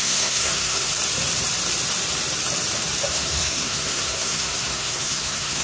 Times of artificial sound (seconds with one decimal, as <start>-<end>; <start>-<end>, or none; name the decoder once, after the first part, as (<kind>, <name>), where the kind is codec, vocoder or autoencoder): 0.0-0.9 (codec, SNAC); 3.1-5.6